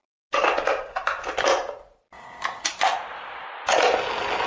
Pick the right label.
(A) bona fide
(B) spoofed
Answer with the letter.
A